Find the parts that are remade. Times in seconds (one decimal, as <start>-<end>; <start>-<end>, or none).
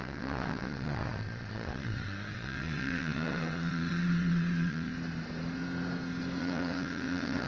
0.0-4.9; 6.4-7.5